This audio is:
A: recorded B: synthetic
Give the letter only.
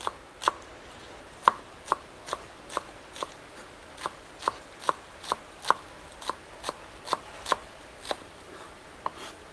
A